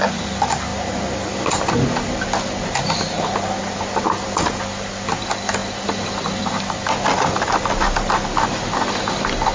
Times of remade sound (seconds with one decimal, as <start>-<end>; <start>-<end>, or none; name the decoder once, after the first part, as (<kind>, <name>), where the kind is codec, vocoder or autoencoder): none